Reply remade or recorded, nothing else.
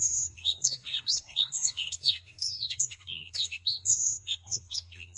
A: remade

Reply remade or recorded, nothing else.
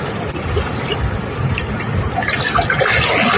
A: recorded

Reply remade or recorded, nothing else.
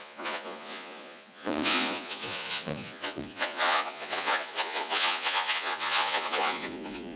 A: remade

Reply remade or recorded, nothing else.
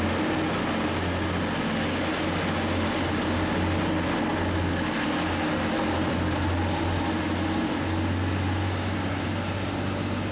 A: recorded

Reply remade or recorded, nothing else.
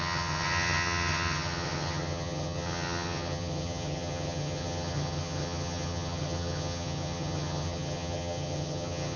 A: remade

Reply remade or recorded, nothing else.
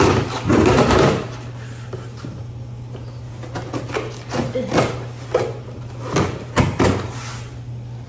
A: recorded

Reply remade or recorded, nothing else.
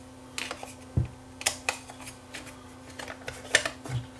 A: recorded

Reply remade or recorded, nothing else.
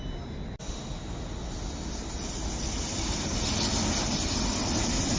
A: recorded